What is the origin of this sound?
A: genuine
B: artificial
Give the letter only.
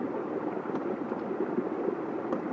A